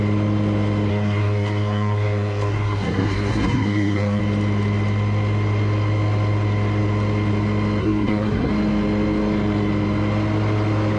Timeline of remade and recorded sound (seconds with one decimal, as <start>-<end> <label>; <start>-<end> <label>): 0.0-0.9 recorded; 0.9-4.2 remade; 4.2-7.8 recorded; 7.8-8.5 remade; 8.5-11.0 recorded